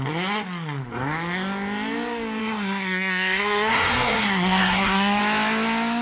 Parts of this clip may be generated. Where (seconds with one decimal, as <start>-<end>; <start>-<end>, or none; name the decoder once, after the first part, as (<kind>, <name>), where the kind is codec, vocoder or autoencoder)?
2.4-5.2 (codec, SNAC)